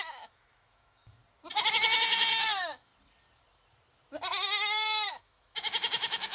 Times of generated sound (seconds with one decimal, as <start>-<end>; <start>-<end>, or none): 0.0-1.2; 1.7-2.9; 5.1-6.3